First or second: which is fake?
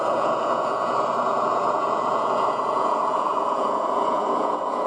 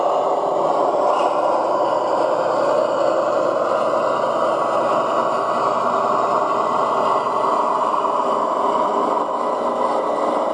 first